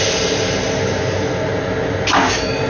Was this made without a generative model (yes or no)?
yes